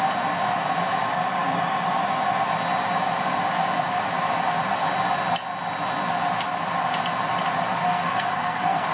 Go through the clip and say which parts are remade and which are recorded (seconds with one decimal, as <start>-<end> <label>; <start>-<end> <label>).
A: 0.0-7.9 recorded; 7.9-8.9 remade